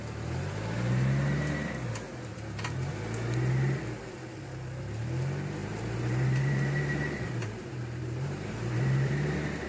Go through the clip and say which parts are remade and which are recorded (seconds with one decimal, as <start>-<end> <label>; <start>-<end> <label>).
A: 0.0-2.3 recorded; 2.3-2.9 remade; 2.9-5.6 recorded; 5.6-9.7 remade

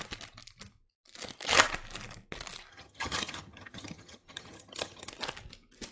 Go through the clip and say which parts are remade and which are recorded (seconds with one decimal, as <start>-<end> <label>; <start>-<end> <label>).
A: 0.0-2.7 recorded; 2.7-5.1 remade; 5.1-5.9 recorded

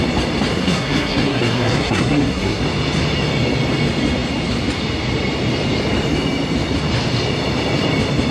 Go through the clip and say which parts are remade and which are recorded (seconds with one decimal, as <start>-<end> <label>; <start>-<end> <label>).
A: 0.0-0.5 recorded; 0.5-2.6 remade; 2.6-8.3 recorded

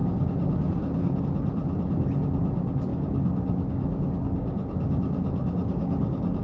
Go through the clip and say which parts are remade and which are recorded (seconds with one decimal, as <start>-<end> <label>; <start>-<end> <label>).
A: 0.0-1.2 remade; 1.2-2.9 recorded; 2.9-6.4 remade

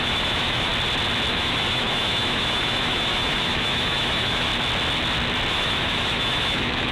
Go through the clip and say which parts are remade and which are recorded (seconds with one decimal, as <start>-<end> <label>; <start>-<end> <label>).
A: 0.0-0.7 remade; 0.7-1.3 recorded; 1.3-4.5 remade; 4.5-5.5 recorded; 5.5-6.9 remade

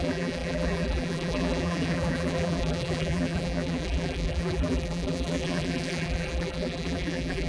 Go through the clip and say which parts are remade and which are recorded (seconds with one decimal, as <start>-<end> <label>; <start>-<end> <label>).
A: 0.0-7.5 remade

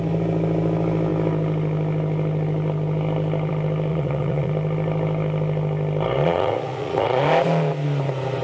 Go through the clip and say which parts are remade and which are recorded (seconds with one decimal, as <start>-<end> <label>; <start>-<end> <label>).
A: 0.0-3.9 recorded; 3.9-4.5 remade; 4.5-6.2 recorded; 6.2-7.2 remade; 7.2-8.4 recorded